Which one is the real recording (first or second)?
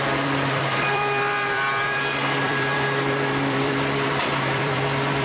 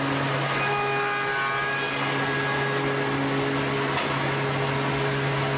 second